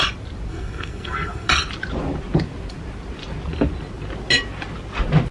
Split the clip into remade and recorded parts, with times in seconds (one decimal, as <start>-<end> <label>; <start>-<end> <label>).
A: 0.0-0.5 recorded; 0.5-1.5 remade; 1.5-5.3 recorded